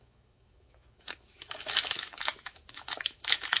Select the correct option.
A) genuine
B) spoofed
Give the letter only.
B